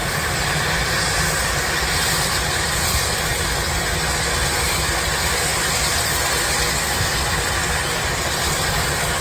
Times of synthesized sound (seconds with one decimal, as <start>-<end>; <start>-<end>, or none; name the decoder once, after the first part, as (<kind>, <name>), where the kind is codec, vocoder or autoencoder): 0.0-3.1 (vocoder, BigVGAN v2)